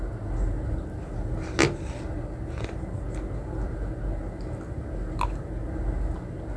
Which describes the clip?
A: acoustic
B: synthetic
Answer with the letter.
A